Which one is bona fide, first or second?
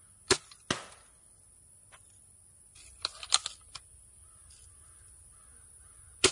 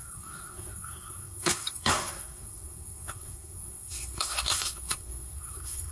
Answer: first